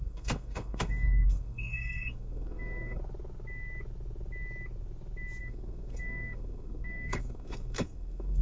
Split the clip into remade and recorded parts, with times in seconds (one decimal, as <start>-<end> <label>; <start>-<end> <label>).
0.0-3.0 remade; 3.0-5.4 recorded; 5.4-8.4 remade